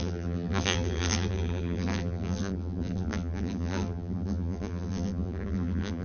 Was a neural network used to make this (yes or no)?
yes